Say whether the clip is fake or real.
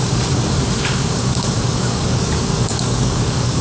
fake